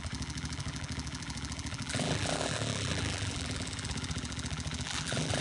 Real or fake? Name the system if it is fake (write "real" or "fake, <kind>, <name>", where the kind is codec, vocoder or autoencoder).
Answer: fake, vocoder, BigVGAN v2